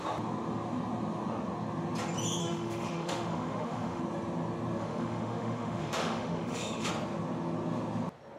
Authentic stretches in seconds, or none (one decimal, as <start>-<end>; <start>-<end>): 0.0-2.4; 4.0-4.8; 6.9-8.4